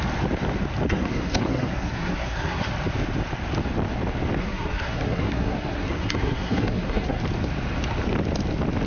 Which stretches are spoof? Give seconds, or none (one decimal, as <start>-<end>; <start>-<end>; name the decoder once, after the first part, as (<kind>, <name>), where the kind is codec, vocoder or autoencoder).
0.9-2.7 (codec, SNAC); 4.4-7.2